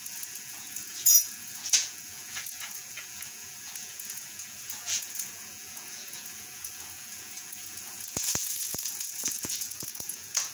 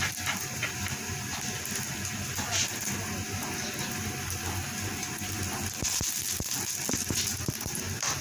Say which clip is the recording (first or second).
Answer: second